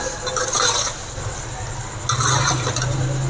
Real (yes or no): yes